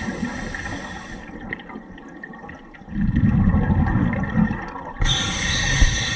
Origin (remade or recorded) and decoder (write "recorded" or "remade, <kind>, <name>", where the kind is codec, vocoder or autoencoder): recorded